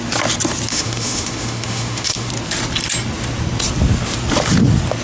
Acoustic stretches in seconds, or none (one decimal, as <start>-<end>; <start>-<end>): 0.0-0.7; 2.3-5.0